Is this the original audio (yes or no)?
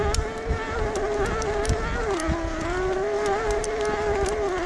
yes